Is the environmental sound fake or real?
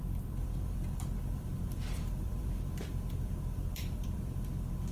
fake